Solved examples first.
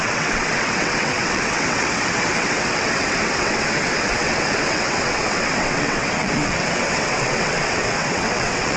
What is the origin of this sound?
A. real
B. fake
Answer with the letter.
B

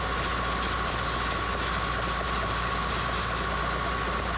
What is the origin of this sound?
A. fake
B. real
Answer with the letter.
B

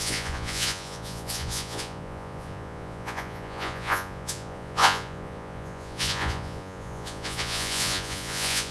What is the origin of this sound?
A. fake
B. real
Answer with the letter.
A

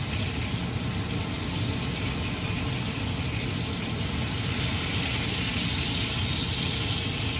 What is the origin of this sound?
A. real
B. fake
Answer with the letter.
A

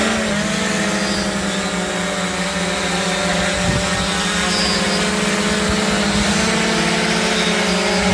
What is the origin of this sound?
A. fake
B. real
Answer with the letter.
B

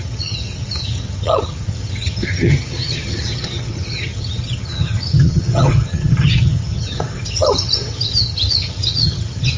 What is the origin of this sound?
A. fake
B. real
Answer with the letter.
A